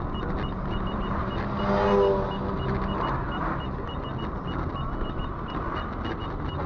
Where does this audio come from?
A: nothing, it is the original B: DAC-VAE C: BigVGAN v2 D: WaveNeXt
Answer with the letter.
A